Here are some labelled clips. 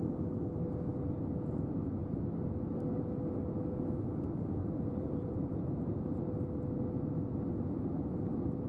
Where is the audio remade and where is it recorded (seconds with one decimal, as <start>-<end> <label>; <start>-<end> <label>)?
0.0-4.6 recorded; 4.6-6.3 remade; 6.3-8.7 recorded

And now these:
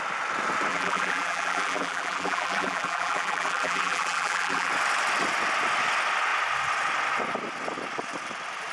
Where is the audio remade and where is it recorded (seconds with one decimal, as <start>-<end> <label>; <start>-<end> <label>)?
0.0-0.7 recorded; 0.7-4.7 remade; 4.7-8.7 recorded

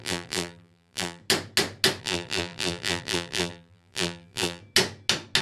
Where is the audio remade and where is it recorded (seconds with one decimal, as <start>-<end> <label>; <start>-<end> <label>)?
0.0-1.2 remade; 1.2-2.0 recorded; 2.0-4.6 remade; 4.6-5.4 recorded

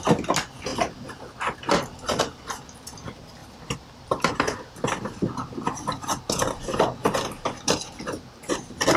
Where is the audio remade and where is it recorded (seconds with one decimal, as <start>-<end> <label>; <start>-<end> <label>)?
0.0-0.7 recorded; 0.7-2.2 remade; 2.2-3.4 recorded; 3.4-5.3 remade; 5.3-9.0 recorded

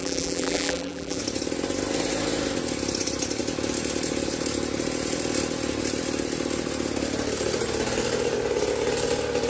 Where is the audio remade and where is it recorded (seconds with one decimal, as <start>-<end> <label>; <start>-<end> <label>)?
0.0-1.2 remade; 1.2-9.5 recorded